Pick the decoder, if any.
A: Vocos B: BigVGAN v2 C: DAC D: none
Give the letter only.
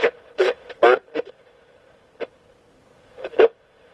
D